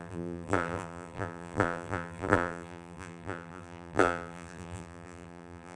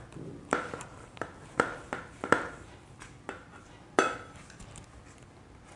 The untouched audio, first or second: second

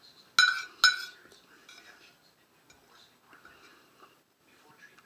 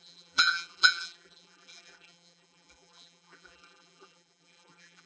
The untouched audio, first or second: first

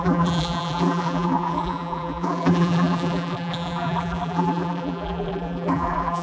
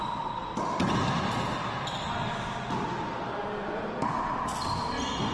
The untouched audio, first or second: second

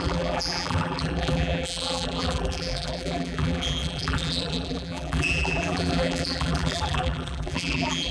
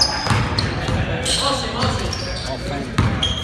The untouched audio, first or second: second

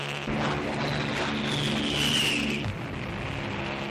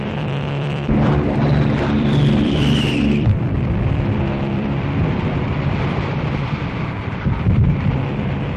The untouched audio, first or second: first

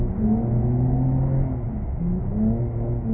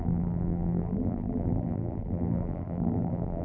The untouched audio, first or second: first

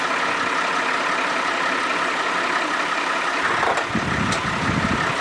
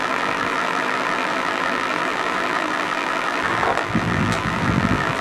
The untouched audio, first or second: first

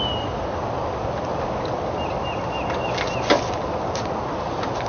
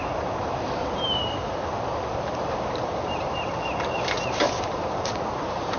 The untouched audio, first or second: first